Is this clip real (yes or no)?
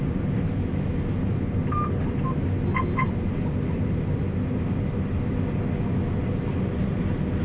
yes